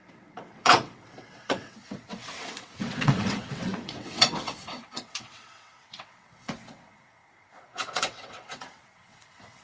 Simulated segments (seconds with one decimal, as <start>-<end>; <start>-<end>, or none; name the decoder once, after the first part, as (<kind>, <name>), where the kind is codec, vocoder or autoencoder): 0.0-9.6 (vocoder, WaveNeXt)